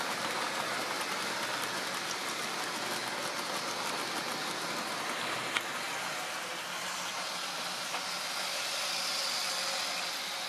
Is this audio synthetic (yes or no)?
no